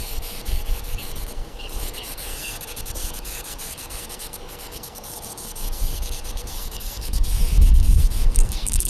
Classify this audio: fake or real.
fake